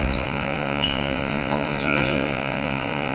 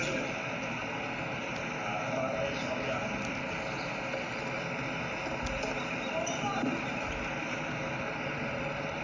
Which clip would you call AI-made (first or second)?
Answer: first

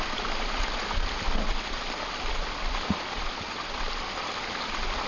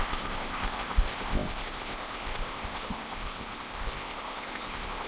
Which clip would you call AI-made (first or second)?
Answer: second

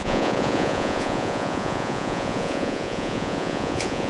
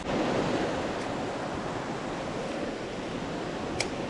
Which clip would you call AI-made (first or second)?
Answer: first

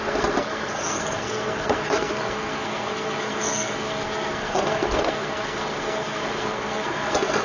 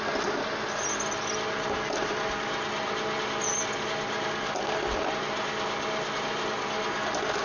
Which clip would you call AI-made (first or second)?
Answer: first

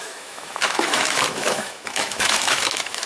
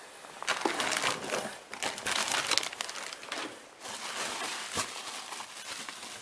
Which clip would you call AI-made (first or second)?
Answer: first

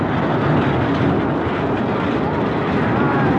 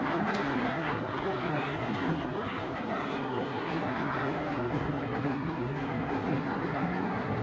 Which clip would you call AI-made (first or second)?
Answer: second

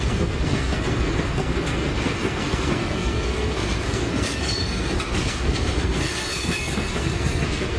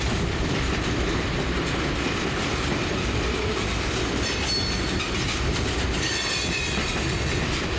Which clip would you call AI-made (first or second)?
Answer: first